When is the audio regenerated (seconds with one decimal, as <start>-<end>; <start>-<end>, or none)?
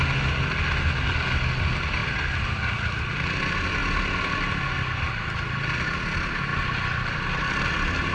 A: none